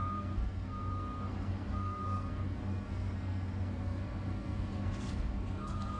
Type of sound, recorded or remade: remade